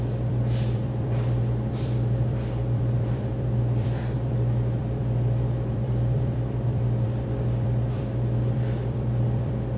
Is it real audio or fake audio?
fake